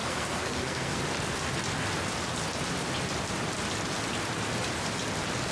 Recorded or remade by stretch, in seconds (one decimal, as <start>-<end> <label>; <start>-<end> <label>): 0.0-1.0 remade; 1.0-5.5 recorded